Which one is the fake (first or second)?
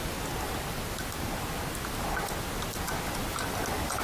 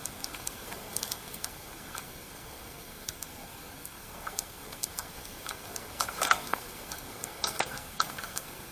second